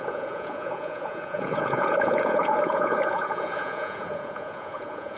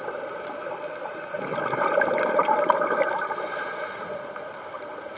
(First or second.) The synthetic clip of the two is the first